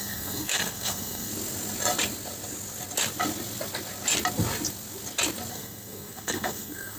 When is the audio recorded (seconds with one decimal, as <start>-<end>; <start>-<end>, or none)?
1.3-5.5